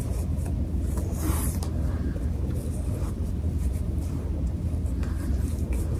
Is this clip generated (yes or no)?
yes